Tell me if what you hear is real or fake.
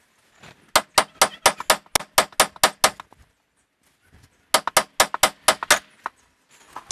real